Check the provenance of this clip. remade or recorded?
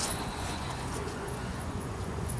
remade